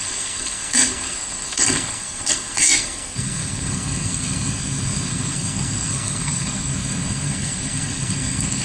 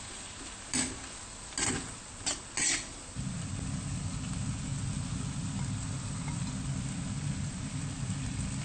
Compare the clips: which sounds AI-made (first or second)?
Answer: first